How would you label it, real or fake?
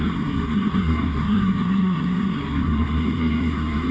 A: fake